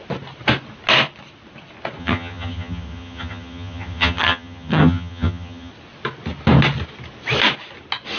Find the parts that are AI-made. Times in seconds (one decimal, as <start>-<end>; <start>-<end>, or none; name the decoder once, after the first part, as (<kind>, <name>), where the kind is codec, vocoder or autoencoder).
2.0-5.7 (vocoder, HiFi-GAN)